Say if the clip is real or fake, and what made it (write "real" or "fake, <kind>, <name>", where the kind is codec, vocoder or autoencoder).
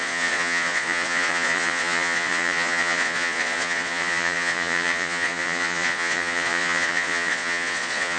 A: fake, vocoder, Vocos